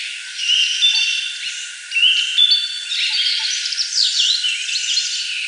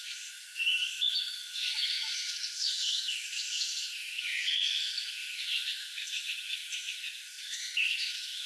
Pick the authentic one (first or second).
first